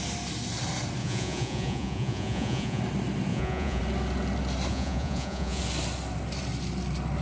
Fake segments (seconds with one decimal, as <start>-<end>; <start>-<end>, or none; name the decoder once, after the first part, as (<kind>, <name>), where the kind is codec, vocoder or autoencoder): 1.0-2.8 (vocoder, Vocos); 3.3-3.8; 4.7-5.6